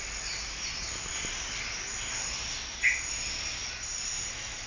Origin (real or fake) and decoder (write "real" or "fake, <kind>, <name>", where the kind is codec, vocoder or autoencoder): real